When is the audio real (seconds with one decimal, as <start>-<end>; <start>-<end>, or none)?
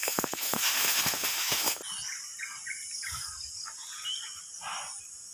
1.8-5.3